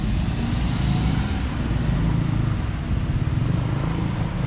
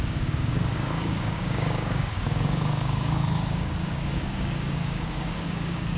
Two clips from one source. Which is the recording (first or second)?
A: first